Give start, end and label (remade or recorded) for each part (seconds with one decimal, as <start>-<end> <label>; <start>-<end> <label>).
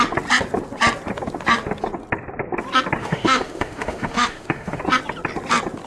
0.0-3.0 recorded; 3.0-4.8 remade; 4.8-5.9 recorded